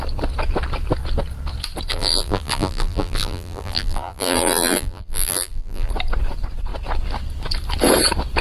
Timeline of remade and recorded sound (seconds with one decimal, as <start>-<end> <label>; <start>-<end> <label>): 0.0-1.9 recorded; 1.9-5.9 remade; 5.9-8.4 recorded